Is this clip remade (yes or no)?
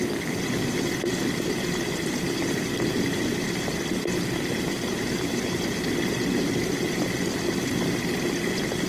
no